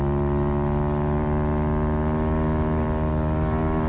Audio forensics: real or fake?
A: real